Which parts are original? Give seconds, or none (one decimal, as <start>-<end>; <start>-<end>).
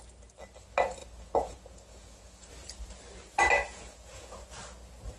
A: 0.0-1.0; 2.5-3.6; 4.4-5.2